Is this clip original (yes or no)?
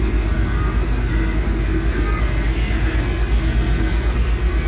no